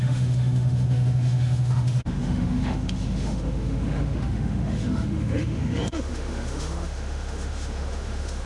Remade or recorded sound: remade